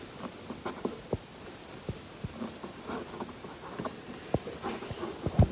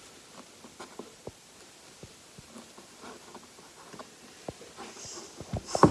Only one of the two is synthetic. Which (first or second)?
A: second